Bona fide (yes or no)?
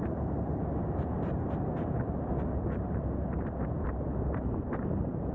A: no